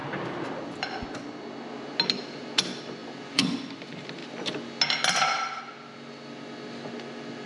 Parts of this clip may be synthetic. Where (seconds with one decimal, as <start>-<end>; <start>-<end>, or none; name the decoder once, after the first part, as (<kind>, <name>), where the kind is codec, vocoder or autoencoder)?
none